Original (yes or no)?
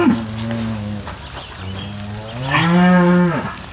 yes